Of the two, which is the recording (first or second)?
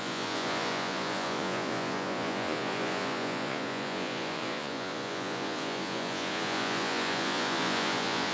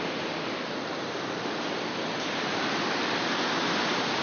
second